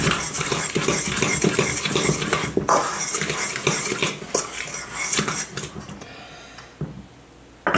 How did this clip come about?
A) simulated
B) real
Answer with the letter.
B